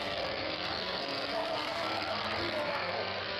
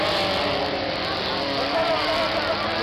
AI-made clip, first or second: first